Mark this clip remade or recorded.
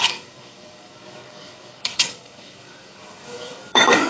remade